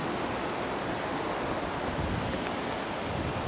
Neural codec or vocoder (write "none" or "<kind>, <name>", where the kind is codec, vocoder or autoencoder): none